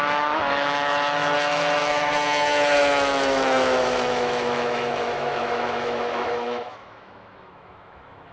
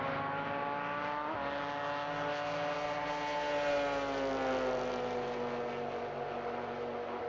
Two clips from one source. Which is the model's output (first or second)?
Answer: first